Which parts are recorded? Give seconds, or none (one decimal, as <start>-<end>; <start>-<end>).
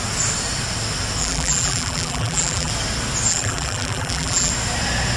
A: 0.0-1.2; 2.7-3.3; 4.5-5.2